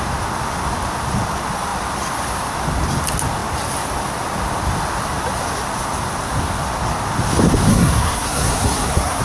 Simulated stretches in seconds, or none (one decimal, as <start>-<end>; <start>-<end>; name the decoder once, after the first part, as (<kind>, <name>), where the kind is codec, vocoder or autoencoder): 7.7-9.2 (codec, SNAC)